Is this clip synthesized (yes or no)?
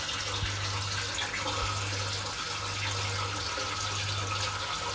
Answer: no